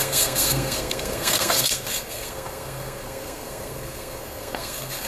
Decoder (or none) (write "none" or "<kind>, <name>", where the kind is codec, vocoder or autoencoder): codec, SNAC